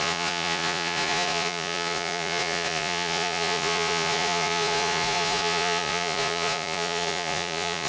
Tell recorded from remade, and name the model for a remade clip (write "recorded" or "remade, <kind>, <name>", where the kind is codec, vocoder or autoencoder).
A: remade, vocoder, Vocos